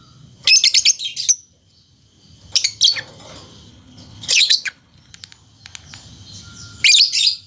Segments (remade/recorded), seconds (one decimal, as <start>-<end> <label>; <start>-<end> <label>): 0.0-3.7 recorded; 3.7-5.1 remade; 5.1-7.5 recorded